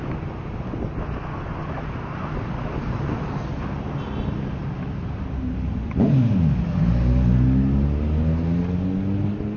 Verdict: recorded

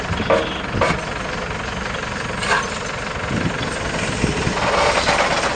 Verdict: recorded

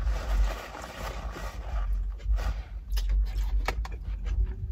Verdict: recorded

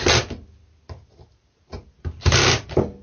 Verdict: recorded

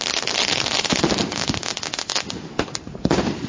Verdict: recorded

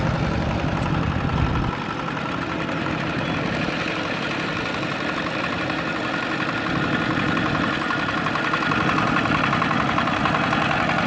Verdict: recorded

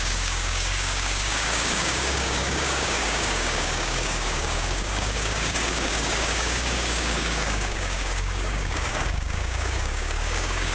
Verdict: remade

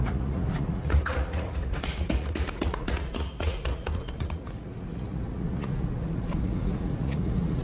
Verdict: remade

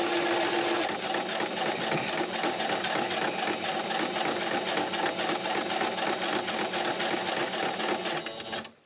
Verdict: recorded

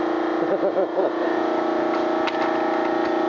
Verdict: recorded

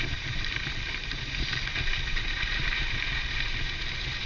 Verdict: remade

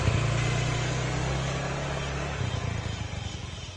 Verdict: recorded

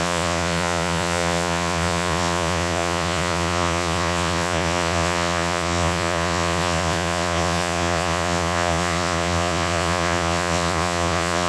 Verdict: remade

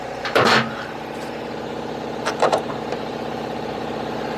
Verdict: remade